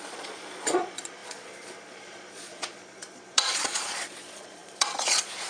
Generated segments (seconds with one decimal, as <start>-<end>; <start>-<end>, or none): 0.0-5.5